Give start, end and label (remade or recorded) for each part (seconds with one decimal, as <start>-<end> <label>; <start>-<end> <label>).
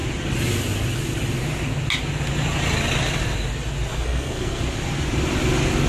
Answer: 0.0-3.9 recorded; 3.9-4.6 remade; 4.6-5.9 recorded